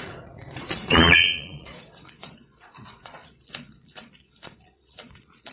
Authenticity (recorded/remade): remade